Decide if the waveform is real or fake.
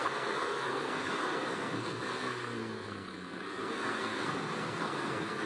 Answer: fake